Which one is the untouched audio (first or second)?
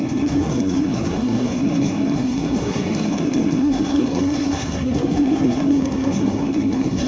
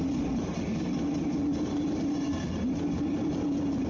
second